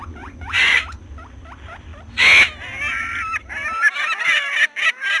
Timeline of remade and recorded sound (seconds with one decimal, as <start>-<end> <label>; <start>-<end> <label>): 0.0-0.8 remade; 0.8-5.2 recorded